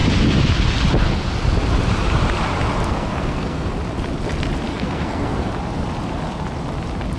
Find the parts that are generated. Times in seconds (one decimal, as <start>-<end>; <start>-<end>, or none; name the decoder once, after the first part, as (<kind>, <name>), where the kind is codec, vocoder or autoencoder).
2.8-3.8 (codec, SNAC); 4.7-5.5